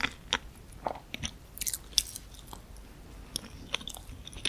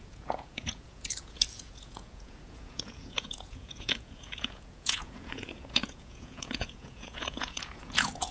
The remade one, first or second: second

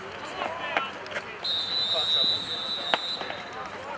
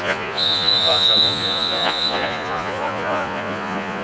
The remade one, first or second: second